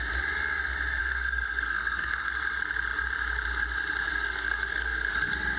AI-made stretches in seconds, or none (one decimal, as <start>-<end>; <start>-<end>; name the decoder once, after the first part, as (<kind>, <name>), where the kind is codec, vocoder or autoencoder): 1.0-2.3 (codec, SNAC); 4.1-5.1